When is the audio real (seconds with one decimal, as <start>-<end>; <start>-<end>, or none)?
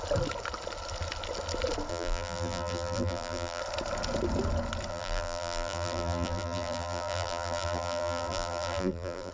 0.0-1.9; 3.6-4.9